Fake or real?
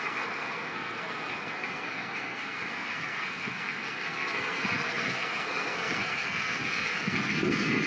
fake